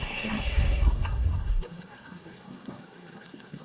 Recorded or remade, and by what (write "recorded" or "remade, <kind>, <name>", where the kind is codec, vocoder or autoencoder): remade, codec, SNAC